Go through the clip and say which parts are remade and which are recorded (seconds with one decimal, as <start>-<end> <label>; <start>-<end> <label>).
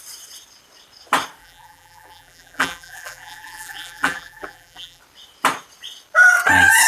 0.0-1.4 recorded; 1.4-5.0 remade; 5.0-6.9 recorded